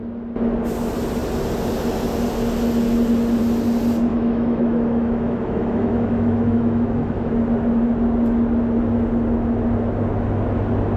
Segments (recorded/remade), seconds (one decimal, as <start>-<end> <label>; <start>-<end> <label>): 0.0-4.1 recorded; 4.1-7.3 remade; 7.3-11.0 recorded